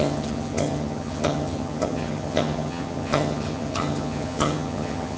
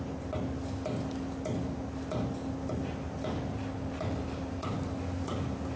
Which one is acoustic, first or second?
second